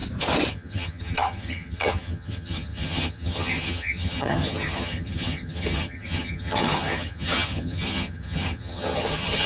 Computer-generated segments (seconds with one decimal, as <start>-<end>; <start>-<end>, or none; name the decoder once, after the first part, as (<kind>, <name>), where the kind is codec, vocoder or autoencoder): 0.5-9.5 (vocoder, HiFi-GAN)